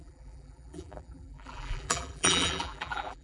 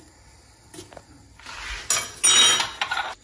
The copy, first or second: first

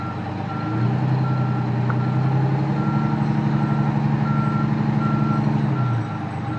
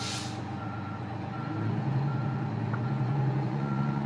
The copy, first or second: second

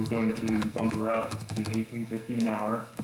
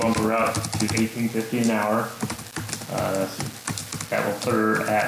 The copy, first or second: first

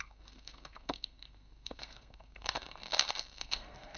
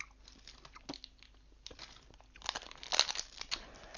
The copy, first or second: first